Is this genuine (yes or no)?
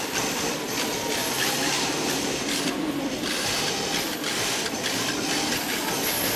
yes